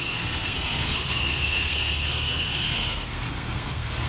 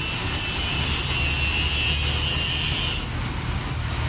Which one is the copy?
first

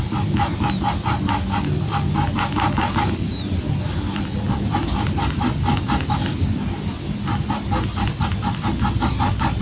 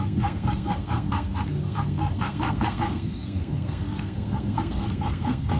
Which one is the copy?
second